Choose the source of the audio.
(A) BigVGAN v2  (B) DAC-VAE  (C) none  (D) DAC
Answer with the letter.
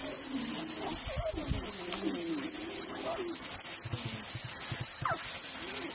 C